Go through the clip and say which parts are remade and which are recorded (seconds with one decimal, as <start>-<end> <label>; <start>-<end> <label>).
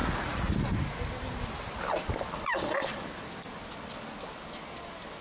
0.0-0.5 remade; 0.5-5.2 recorded